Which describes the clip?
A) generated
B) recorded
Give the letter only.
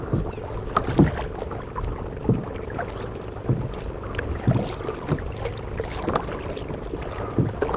B